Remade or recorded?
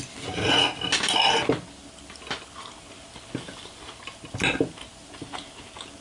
recorded